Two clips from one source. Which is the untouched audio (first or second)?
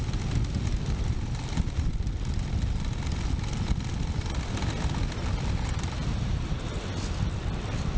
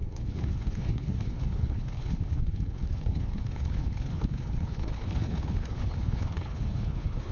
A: first